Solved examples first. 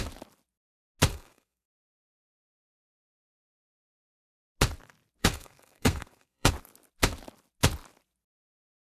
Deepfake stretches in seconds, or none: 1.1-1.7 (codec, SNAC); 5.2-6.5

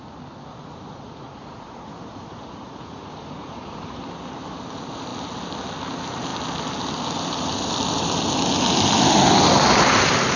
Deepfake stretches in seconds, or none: 0.5-4.0 (vocoder, Vocos)